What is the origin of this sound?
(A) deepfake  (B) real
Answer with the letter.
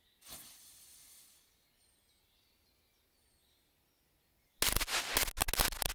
B